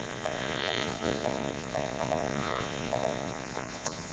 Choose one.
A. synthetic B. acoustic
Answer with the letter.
A